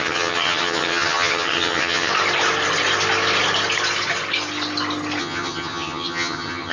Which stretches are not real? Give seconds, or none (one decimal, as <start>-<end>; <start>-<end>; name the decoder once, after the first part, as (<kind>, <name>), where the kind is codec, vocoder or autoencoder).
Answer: 0.0-2.1 (vocoder, HiFi-GAN); 5.2-6.7